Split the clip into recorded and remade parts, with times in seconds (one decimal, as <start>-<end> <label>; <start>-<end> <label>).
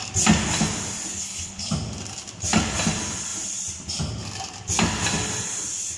0.0-1.1 recorded; 1.1-1.7 remade; 1.7-6.0 recorded